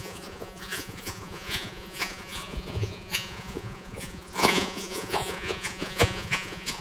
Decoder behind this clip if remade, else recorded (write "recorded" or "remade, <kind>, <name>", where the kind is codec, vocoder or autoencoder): remade, vocoder, Vocos